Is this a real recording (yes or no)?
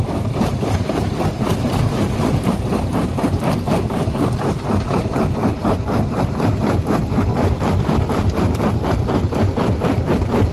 no